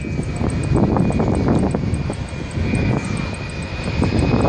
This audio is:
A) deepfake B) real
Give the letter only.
B